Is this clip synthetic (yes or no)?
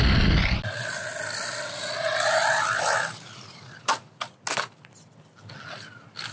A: no